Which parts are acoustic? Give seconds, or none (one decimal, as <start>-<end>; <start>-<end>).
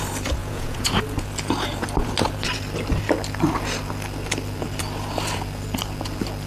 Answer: 0.0-0.4; 1.0-6.5